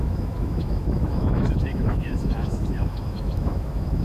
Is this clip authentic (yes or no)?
no